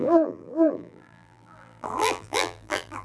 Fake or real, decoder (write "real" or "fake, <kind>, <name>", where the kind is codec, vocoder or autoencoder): fake, vocoder, BigVGAN v2